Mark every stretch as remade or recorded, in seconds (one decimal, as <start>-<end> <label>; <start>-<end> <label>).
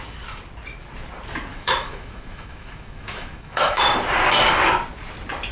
0.0-1.5 recorded; 1.5-3.8 remade; 3.8-5.5 recorded